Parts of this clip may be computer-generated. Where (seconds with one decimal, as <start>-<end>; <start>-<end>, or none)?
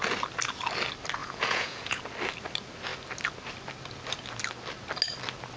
1.2-2.0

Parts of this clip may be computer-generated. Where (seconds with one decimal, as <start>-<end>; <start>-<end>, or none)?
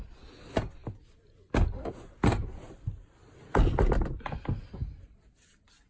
none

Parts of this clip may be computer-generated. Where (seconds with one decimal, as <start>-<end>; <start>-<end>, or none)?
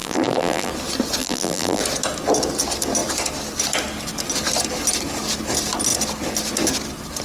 0.0-0.7; 1.2-1.8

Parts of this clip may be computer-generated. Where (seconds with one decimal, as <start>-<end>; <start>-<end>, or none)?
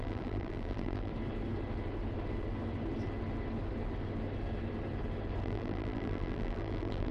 0.0-1.1; 5.4-7.1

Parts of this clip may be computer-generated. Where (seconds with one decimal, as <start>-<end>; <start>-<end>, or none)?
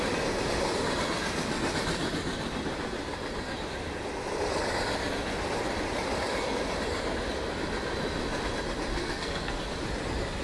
8.9-9.6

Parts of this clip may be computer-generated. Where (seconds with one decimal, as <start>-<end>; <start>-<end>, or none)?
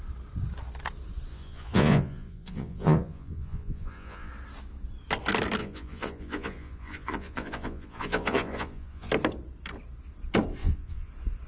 1.3-4.3; 5.6-9.1; 10.6-11.1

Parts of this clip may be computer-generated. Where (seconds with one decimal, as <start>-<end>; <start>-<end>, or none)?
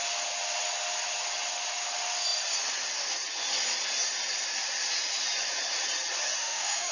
6.4-6.9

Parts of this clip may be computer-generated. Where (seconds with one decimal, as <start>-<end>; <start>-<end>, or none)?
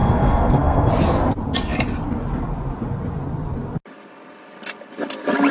0.0-0.9